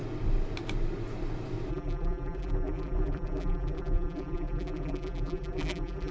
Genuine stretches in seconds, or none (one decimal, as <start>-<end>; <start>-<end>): 0.0-1.7

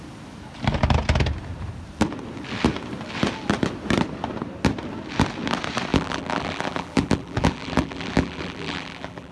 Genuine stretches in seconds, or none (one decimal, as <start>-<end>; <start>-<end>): 0.0-5.9

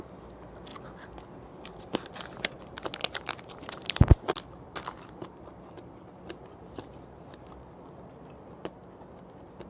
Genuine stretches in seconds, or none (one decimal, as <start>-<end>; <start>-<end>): 0.0-3.0; 7.5-9.7

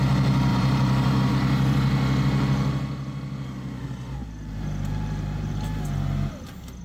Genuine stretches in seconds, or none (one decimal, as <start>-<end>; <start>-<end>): 0.0-0.5; 1.3-4.2; 5.5-6.8